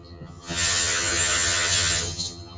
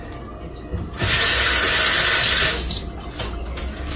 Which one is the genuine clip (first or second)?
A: second